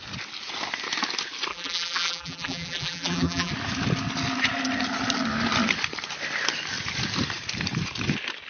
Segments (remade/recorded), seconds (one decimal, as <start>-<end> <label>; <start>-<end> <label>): 0.0-1.5 recorded; 1.5-3.5 remade; 3.5-8.5 recorded